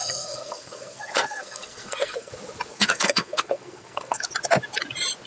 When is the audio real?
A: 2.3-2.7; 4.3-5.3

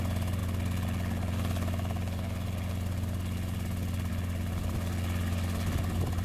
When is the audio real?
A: 0.0-6.2

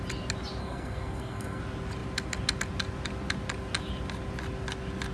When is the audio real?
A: 0.0-0.6; 1.6-5.1

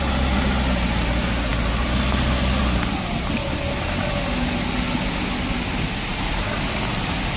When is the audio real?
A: 0.0-7.4

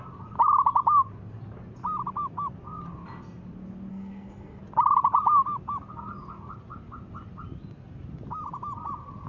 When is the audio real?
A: 0.0-3.9; 4.6-9.3

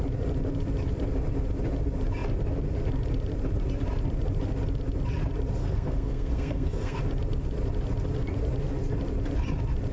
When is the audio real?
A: 0.0-5.6; 7.0-9.9